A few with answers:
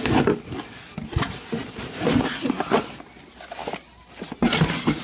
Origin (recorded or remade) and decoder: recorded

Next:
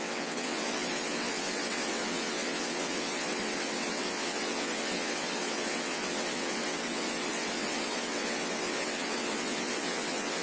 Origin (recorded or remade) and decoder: remade, vocoder, WaveNeXt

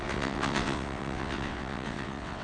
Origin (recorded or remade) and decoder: remade, vocoder, WaveNeXt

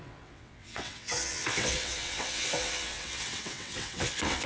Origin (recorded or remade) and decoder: remade, vocoder, WaveNeXt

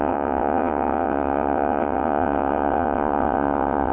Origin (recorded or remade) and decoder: remade, vocoder, WaveNeXt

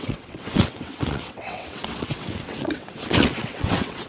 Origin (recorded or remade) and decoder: remade, vocoder, WaveNeXt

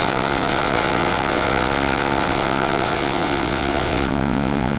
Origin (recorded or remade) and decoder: remade, vocoder, WaveNeXt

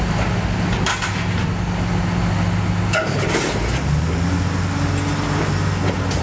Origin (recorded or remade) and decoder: recorded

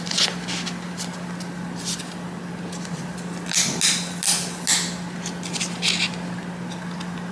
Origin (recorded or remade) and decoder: recorded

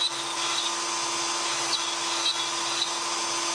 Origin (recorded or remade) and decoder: recorded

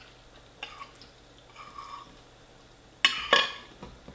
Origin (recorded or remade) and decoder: recorded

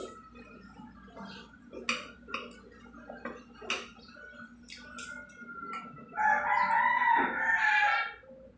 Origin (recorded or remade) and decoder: recorded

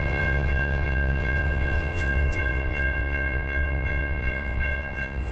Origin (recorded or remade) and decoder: remade, vocoder, WaveNeXt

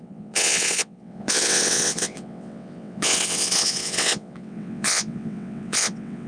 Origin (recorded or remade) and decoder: remade, vocoder, WaveNeXt